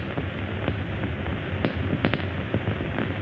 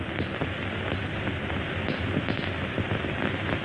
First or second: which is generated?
first